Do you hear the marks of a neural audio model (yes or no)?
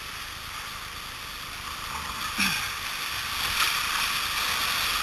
no